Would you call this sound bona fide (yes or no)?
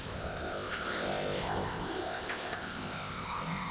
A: no